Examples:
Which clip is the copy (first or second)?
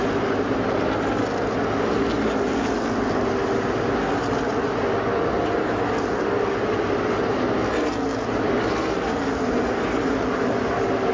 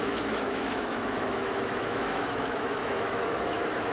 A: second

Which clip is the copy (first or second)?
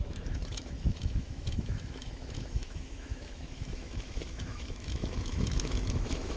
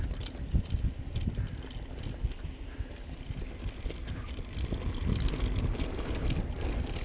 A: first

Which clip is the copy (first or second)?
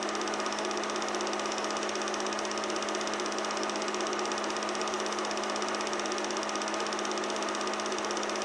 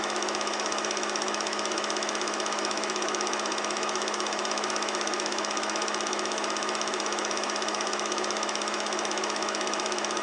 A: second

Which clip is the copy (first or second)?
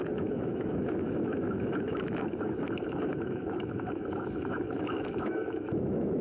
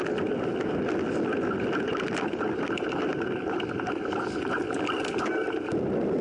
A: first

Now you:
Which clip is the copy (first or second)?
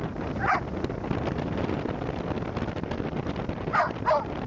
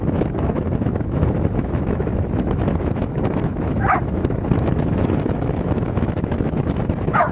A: second